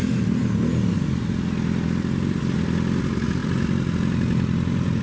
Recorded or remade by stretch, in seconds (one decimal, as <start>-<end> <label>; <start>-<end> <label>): 0.0-5.0 recorded